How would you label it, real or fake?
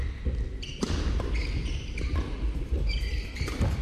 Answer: real